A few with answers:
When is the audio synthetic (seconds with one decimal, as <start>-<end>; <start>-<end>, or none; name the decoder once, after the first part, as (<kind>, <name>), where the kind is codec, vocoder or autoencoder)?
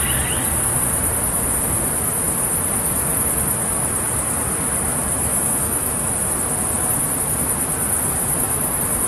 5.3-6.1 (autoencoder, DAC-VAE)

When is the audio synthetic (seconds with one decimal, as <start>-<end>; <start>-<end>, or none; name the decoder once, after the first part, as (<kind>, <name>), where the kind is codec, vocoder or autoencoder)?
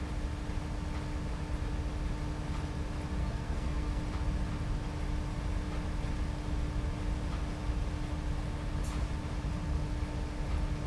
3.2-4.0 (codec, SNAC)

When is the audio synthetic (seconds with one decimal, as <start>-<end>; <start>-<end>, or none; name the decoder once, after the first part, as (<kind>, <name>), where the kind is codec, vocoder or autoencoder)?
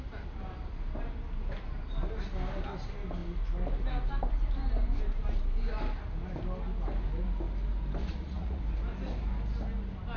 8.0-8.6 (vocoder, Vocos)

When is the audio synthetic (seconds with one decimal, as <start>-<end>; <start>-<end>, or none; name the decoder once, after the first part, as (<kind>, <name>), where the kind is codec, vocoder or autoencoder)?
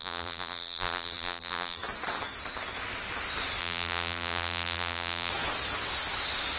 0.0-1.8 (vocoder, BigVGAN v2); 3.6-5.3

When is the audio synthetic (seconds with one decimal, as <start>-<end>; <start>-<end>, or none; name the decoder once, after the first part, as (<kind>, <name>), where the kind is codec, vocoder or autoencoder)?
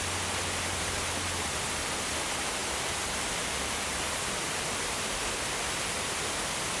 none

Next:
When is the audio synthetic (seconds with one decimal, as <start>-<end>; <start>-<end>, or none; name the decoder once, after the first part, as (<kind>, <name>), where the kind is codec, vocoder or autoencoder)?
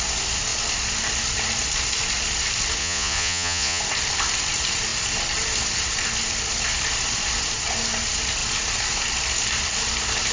2.8-3.8 (vocoder, Vocos)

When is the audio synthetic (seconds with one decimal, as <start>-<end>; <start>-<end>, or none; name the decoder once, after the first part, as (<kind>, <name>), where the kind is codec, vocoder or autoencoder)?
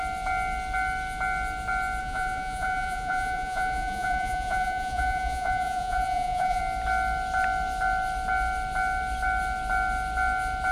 2.0-6.6 (vocoder, Vocos)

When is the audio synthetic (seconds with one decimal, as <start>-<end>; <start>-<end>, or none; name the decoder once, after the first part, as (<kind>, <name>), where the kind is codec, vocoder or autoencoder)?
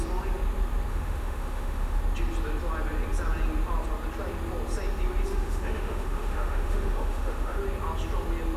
0.9-2.0 (autoencoder, DAC-VAE); 5.3-7.6